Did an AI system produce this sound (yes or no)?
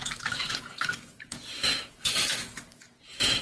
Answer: yes